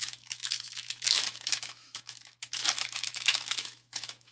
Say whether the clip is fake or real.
fake